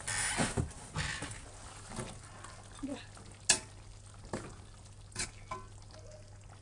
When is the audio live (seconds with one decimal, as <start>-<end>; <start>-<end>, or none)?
0.0-6.6